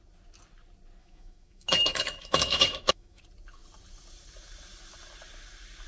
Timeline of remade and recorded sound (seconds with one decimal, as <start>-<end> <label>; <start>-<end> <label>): 0.0-1.0 recorded; 1.0-3.2 remade; 3.2-5.9 recorded